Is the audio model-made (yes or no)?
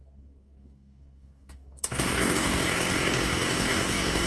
yes